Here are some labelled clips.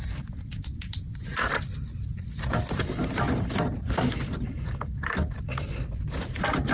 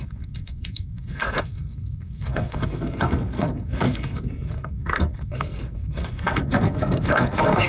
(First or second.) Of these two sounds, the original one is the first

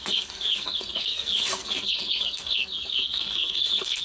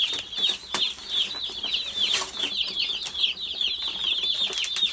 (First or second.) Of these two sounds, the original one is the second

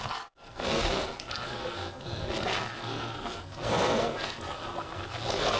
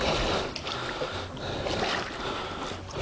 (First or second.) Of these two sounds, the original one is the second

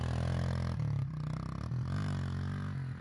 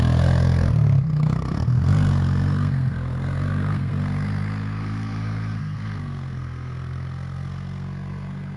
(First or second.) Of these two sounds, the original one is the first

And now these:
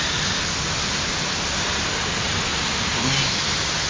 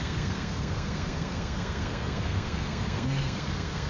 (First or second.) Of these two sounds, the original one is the first